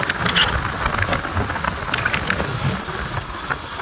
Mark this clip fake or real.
real